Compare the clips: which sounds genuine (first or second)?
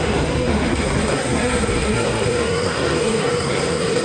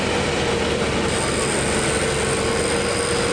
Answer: second